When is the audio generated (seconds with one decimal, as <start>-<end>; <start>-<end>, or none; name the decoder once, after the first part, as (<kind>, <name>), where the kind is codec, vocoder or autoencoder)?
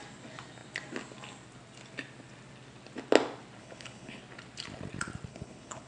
3.6-4.2 (codec, HILCodec); 5.3-5.9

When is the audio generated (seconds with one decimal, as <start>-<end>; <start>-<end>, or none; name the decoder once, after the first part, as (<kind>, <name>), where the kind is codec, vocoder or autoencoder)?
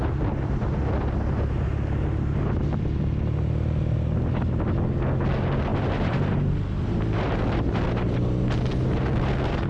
5.7-6.5 (vocoder, BigVGAN v2)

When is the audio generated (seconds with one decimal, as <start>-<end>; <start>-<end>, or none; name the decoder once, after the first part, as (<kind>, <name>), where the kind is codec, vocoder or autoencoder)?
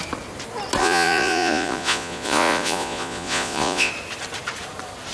0.8-3.9 (vocoder, Vocos)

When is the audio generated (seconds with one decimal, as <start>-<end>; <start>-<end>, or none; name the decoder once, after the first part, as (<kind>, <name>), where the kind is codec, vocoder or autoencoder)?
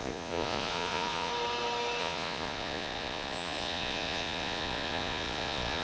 0.0-1.3 (vocoder, Vocos); 2.0-5.8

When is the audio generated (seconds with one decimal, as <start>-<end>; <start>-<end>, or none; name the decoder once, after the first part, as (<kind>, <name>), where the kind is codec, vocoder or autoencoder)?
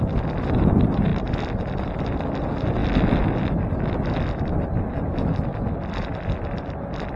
none